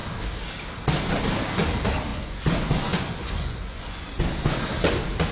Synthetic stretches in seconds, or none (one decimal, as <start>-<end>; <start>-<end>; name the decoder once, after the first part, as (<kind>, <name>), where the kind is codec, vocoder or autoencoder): 2.1-4.6 (vocoder, Vocos)